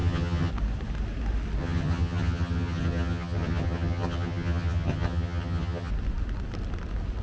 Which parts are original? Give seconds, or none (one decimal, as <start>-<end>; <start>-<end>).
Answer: 0.5-1.6; 5.9-7.2